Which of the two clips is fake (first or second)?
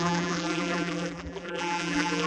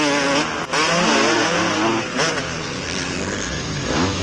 first